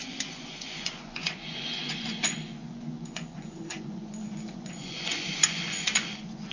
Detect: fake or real fake